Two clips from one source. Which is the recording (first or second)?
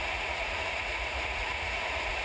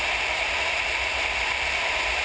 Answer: second